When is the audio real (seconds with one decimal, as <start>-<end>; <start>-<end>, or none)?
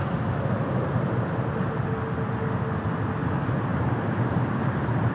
0.0-3.7